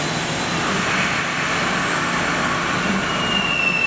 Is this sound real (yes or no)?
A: yes